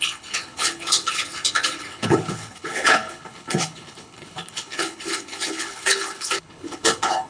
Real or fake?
fake